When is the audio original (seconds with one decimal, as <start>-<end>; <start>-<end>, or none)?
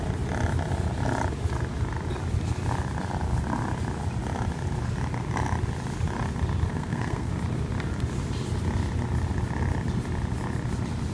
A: 0.0-6.7; 7.3-11.1